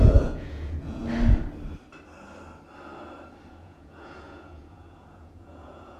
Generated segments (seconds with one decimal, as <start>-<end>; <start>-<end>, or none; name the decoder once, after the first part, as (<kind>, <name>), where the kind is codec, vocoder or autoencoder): 0.0-1.0 (vocoder, Vocos); 3.5-6.0

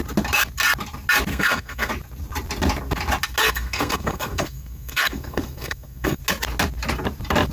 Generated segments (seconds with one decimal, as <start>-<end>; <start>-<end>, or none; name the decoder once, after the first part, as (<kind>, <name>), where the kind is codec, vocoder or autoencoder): 1.3-1.9 (codec, SNAC); 3.4-6.2